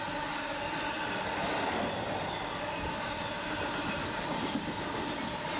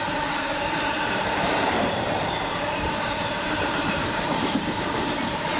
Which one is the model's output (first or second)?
second